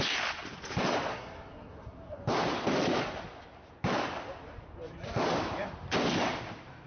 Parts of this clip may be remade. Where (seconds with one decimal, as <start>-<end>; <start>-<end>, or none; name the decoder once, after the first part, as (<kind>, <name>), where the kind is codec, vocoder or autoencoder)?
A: 1.1-2.2 (codec, SNAC)